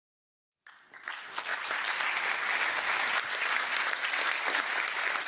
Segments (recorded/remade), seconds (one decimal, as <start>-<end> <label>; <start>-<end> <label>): 0.0-5.3 recorded